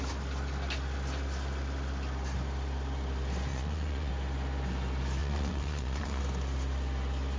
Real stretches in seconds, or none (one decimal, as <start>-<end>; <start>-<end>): 0.0-3.5; 4.1-5.2; 6.2-7.4